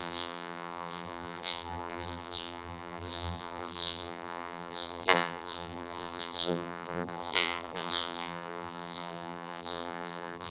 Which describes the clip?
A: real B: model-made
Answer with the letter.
B